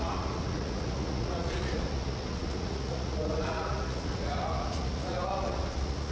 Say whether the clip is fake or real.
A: fake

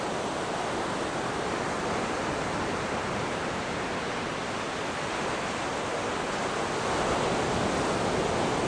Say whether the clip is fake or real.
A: real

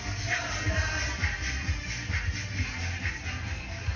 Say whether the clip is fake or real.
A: real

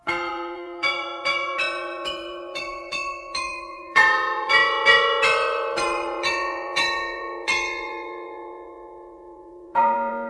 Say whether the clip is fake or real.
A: fake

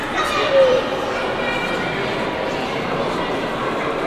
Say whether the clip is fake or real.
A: real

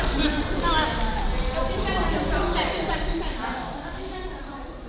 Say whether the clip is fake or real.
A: fake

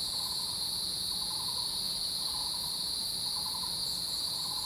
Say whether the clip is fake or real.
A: real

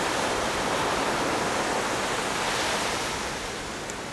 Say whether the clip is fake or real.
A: real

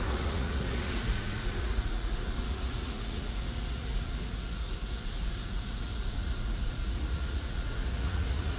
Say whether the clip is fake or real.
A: fake